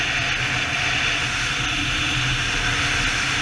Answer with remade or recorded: recorded